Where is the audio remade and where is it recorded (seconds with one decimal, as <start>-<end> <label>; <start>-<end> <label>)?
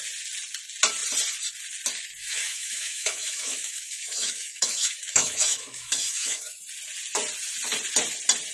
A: 0.0-2.2 recorded; 2.2-6.6 remade; 6.6-8.5 recorded